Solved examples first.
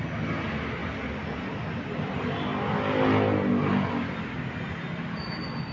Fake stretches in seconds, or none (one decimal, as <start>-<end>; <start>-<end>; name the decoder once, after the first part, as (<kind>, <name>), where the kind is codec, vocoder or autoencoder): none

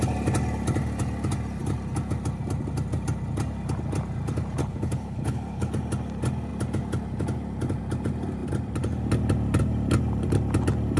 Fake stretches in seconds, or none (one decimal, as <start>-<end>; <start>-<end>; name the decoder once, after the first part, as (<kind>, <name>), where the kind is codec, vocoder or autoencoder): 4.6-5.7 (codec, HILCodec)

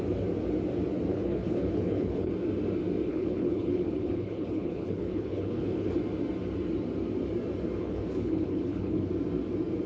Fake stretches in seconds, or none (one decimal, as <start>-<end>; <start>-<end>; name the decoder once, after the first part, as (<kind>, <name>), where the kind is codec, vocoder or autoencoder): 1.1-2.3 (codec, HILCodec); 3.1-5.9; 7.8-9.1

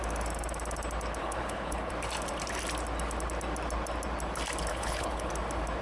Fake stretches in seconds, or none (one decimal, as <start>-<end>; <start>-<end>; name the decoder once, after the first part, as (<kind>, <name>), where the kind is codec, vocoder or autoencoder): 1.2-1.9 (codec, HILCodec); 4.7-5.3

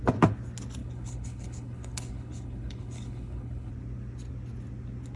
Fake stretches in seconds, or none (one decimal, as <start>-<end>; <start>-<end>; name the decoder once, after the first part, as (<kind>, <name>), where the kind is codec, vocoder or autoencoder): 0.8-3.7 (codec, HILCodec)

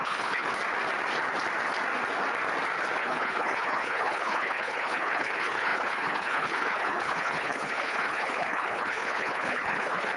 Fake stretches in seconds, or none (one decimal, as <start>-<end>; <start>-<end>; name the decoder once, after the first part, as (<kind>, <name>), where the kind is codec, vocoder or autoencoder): 0.0-0.5 (codec, HILCodec); 3.0-10.2

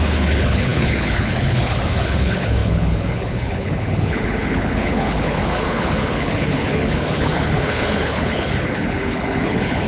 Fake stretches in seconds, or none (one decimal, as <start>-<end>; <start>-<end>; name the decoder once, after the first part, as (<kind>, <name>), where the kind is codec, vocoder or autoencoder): 0.0-9.9 (codec, HILCodec)